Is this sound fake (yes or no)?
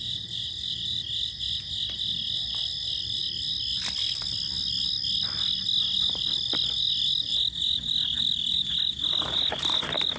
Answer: no